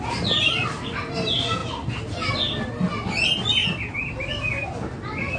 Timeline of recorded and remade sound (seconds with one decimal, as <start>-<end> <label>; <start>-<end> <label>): 0.0-5.4 recorded